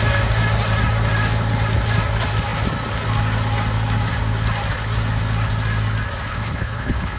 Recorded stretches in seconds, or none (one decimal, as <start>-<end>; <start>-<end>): 0.0-6.3